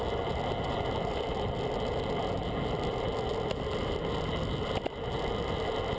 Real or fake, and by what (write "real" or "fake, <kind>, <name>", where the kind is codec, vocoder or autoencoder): real